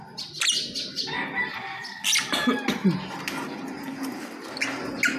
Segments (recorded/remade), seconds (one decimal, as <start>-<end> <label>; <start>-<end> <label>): 0.0-5.2 recorded